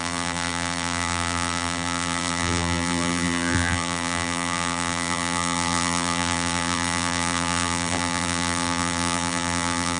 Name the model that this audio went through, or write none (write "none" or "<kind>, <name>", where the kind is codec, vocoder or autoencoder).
vocoder, BigVGAN v2